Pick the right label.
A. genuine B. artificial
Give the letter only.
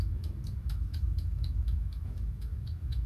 B